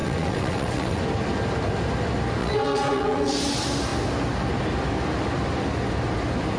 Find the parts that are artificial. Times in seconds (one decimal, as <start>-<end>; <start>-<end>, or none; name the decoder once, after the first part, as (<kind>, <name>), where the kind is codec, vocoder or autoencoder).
0.0-1.0 (vocoder, WaveNeXt); 2.4-3.4